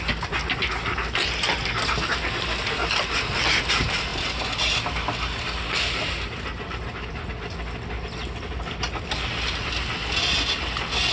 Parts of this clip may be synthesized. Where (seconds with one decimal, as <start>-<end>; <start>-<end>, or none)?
none